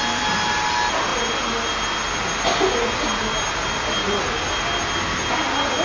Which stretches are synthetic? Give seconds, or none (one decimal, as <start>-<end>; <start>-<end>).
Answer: none